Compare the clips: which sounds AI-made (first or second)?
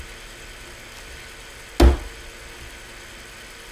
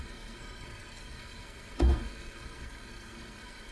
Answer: second